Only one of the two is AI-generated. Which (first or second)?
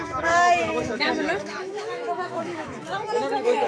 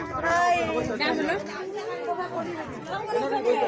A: first